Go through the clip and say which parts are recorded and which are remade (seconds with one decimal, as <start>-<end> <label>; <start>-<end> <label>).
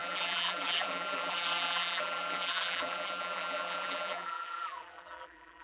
0.0-5.6 remade